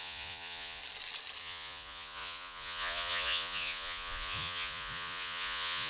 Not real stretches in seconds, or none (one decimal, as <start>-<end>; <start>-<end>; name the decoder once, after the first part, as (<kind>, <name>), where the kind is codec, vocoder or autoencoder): 0.0-0.8 (vocoder, Vocos); 1.4-5.9